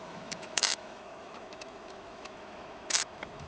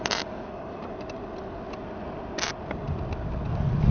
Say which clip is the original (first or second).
second